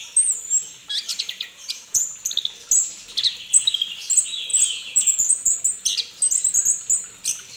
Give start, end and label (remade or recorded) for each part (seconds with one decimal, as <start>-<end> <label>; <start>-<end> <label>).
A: 0.0-1.1 recorded; 1.1-2.0 remade; 2.0-4.5 recorded; 4.5-5.6 remade; 5.6-7.6 recorded